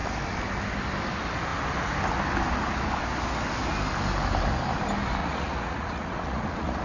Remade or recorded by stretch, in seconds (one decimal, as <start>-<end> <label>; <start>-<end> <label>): 0.0-5.2 recorded; 5.2-6.8 remade

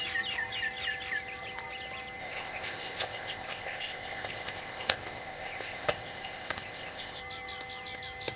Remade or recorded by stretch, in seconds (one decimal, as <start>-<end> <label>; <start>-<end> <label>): 0.0-2.2 recorded; 2.2-7.2 remade; 7.2-8.4 recorded

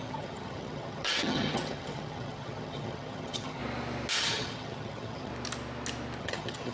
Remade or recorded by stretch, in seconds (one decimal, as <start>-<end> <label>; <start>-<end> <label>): 0.0-3.6 remade; 3.6-4.2 recorded; 4.2-5.3 remade; 5.3-6.2 recorded; 6.2-6.7 remade

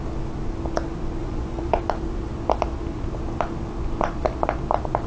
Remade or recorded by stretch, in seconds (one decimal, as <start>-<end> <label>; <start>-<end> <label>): 0.0-1.2 recorded; 1.2-1.8 remade; 1.8-5.1 recorded

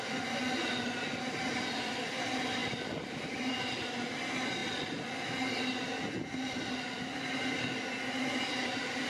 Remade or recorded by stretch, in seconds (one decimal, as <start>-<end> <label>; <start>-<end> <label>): 0.0-9.1 recorded

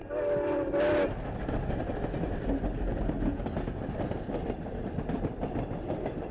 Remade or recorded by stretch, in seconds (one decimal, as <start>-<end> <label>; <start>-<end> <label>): 0.0-6.3 recorded